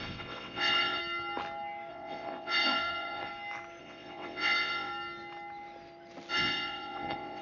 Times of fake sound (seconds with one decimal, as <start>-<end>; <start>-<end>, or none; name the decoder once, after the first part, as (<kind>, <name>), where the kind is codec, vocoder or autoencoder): 0.0-1.0 (vocoder, WaveNeXt); 1.9-3.3; 3.8-4.9; 6.3-7.4